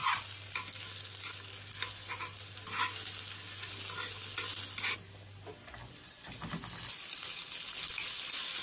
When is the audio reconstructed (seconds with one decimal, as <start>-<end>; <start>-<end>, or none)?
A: 5.8-6.3